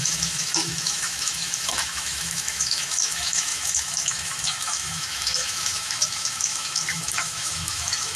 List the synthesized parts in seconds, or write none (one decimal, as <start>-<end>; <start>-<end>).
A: 0.0-8.2